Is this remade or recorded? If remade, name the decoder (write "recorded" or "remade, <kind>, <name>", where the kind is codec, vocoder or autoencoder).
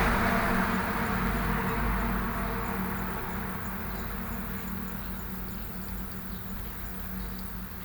recorded